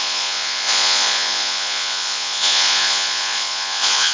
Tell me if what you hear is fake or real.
fake